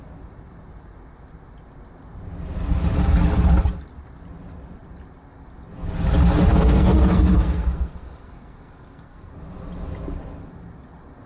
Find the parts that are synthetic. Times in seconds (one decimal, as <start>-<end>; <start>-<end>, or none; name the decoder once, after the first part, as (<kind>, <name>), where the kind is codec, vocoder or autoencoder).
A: 6.5-9.3 (codec, SNAC)

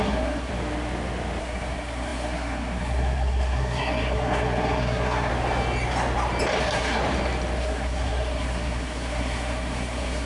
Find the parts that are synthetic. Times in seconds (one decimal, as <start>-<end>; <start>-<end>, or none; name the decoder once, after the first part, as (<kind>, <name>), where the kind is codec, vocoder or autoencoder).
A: 0.0-0.5 (codec, SNAC); 1.4-5.3; 6.6-7.0; 7.6-10.3